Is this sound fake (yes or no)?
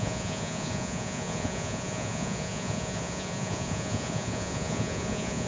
yes